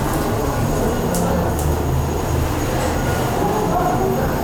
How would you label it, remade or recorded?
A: recorded